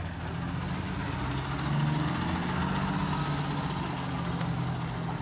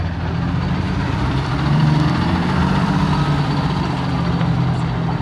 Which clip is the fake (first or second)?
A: second